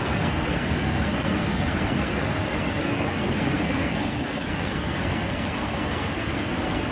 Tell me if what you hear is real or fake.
fake